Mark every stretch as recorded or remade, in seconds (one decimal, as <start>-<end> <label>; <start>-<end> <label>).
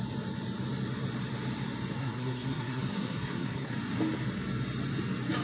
0.0-2.0 recorded; 2.0-3.7 remade; 3.7-5.4 recorded